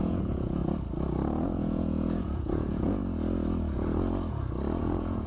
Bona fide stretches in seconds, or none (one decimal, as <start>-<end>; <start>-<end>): 0.6-1.6; 3.0-4.8